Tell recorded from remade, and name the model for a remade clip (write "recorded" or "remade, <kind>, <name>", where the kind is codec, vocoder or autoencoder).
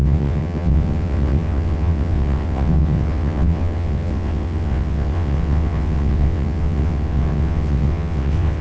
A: remade, vocoder, WaveNeXt